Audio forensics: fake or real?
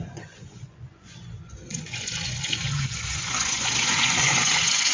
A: fake